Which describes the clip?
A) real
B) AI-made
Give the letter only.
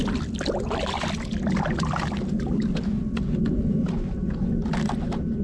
A